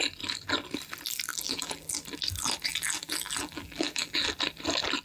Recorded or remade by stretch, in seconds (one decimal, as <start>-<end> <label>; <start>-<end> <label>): 0.0-1.3 recorded; 1.3-1.9 remade; 1.9-2.7 recorded; 2.7-4.3 remade; 4.3-5.0 recorded